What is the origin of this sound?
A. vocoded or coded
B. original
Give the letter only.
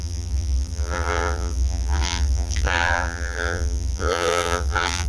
A